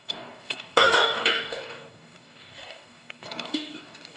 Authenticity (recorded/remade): remade